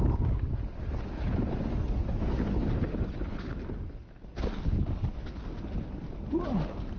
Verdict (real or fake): real